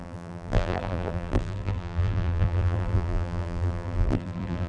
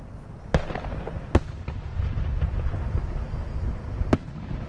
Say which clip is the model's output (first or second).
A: first